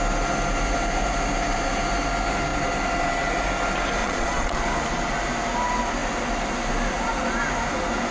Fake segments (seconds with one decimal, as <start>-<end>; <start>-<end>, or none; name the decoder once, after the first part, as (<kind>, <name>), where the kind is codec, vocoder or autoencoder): 4.0-4.6 (vocoder, Vocos)